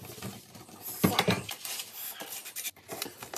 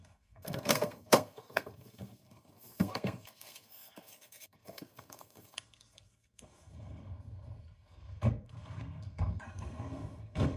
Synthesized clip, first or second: second